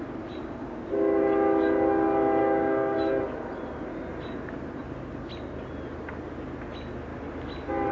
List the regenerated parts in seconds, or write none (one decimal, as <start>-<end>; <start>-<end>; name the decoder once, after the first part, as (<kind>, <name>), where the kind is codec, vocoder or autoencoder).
2.4-3.2 (codec, DAC)